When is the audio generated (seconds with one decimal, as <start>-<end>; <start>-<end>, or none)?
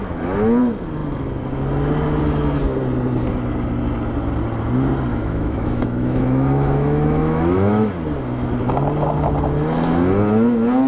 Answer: 5.1-7.9